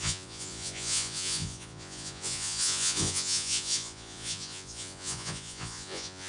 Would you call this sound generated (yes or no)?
yes